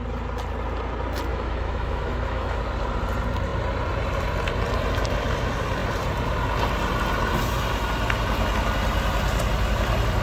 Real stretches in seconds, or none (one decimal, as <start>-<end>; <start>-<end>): 0.0-1.3; 2.6-10.2